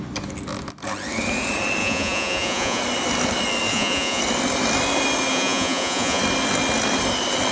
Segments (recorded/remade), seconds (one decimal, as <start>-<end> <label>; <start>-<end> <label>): 0.0-1.8 recorded; 1.8-2.8 remade; 2.8-3.7 recorded; 3.7-4.2 remade; 4.2-5.3 recorded; 5.3-6.2 remade; 6.2-7.5 recorded